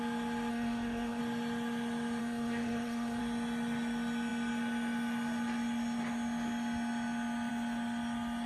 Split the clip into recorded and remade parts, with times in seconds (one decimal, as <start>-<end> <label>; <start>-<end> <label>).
0.0-0.5 recorded; 0.5-1.2 remade; 1.2-2.2 recorded; 2.2-3.2 remade; 3.2-8.5 recorded